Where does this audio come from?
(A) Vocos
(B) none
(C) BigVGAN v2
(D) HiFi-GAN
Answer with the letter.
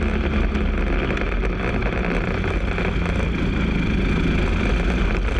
B